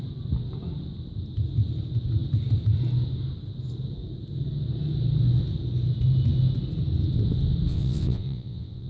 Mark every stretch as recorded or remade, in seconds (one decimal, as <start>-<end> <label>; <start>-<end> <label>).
0.0-7.7 recorded; 7.7-8.9 remade